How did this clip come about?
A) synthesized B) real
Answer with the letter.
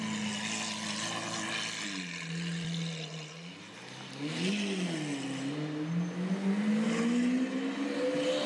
B